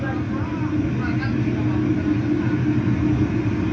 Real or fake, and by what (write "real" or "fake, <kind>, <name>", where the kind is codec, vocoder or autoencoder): real